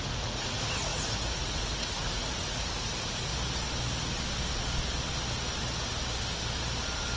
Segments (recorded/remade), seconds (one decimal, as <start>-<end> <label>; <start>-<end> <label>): 0.0-3.3 remade; 3.3-7.2 recorded